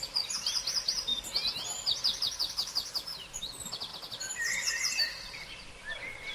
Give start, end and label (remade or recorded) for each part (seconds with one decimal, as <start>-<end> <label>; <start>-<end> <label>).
0.0-6.3 recorded